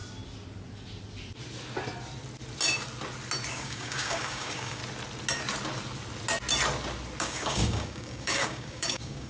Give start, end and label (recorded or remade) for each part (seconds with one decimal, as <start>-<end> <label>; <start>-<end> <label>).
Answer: 0.0-3.5 recorded; 3.5-4.8 remade; 4.8-7.2 recorded; 7.2-9.3 remade